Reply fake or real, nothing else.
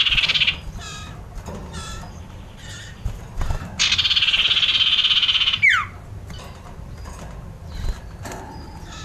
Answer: real